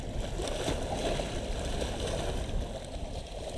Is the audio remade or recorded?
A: recorded